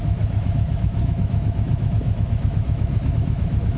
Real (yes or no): no